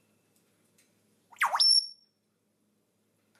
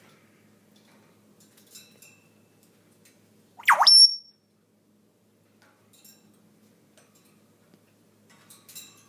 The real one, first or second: second